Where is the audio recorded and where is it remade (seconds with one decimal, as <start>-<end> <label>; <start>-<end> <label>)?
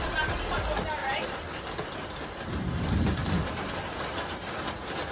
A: 0.0-1.0 recorded; 1.0-2.4 remade; 2.4-3.2 recorded; 3.2-4.0 remade; 4.0-5.1 recorded